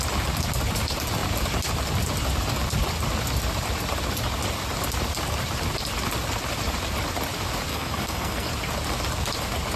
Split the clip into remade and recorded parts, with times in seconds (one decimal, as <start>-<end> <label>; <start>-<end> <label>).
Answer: 0.0-7.7 recorded; 7.7-8.5 remade; 8.5-9.8 recorded